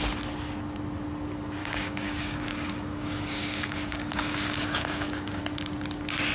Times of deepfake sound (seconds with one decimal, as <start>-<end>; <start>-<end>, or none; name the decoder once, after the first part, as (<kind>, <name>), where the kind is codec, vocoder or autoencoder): 1.6-5.4 (codec, DAC)